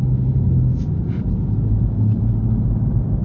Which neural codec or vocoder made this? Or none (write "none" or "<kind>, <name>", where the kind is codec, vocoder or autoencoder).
none